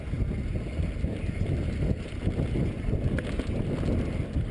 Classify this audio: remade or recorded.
recorded